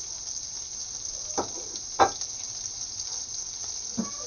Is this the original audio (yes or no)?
yes